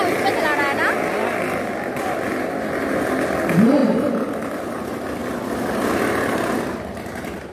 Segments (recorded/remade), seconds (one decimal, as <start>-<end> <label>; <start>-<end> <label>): 0.0-3.8 recorded; 3.8-4.3 remade; 4.3-7.5 recorded